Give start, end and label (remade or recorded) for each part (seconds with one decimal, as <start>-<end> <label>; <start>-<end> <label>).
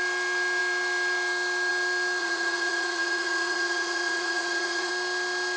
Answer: 0.0-2.2 recorded; 2.2-4.9 remade; 4.9-5.6 recorded